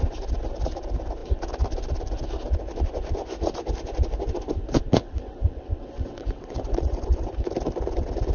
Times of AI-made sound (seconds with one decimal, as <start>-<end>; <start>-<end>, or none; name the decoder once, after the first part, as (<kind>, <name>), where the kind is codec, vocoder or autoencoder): 5.0-7.0 (vocoder, WaveNeXt)